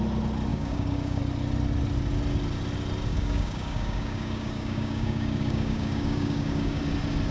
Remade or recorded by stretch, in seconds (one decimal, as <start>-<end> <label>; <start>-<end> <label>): 0.0-0.5 recorded; 0.5-1.2 remade; 1.2-3.1 recorded; 3.1-6.8 remade; 6.8-7.3 recorded